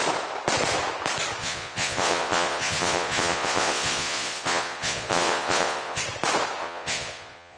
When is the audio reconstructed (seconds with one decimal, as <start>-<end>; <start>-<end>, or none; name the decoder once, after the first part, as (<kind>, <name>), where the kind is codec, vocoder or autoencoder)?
1.4-6.0 (vocoder, Vocos); 6.6-7.6